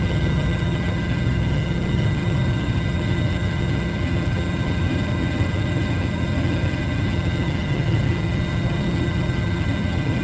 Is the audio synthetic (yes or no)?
yes